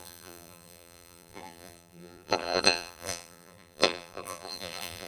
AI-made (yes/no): yes